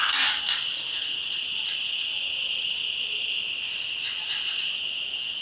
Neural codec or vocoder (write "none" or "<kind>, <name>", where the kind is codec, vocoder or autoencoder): none